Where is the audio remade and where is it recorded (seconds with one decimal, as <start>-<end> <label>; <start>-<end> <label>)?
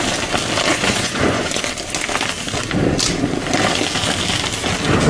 0.0-0.7 recorded; 0.7-1.6 remade; 1.6-5.1 recorded